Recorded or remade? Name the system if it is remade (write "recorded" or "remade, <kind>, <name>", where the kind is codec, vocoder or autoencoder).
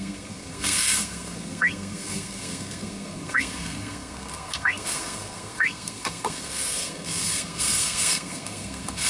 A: remade, codec, SNAC